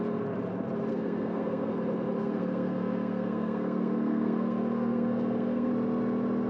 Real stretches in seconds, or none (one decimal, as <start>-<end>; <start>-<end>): 0.0-0.9; 1.7-2.2; 5.7-6.5